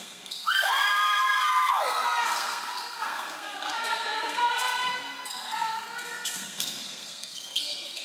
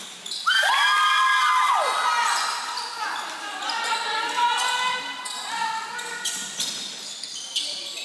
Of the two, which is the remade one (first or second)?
first